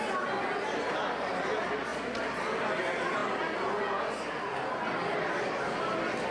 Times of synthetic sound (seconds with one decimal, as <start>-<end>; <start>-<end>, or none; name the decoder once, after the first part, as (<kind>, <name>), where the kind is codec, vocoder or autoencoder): none